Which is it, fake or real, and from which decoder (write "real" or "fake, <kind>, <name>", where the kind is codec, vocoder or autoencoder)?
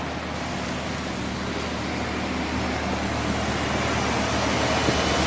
real